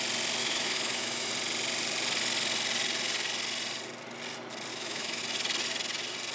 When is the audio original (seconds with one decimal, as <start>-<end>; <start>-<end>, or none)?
0.0-0.4; 1.3-4.7; 5.2-6.3